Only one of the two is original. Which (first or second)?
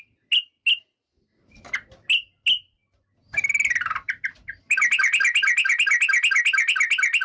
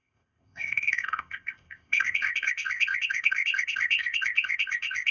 first